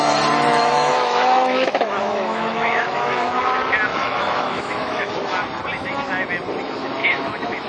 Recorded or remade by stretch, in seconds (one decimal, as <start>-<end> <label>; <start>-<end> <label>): 0.0-0.5 recorded; 0.5-3.4 remade; 3.4-3.9 recorded; 3.9-5.1 remade; 5.1-7.0 recorded; 7.0-7.7 remade